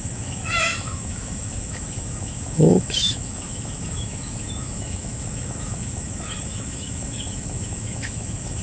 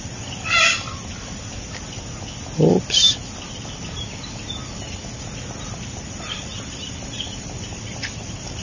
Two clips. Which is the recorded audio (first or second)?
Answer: second